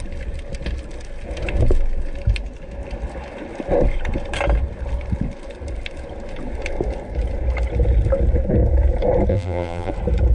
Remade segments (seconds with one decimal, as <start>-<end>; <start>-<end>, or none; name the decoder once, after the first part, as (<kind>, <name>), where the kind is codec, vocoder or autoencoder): 9.3-9.9 (vocoder, BigVGAN v2)